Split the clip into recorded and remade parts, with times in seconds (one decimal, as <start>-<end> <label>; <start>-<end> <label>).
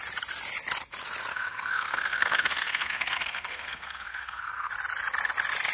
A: 0.0-1.3 recorded; 1.3-4.7 remade; 4.7-5.7 recorded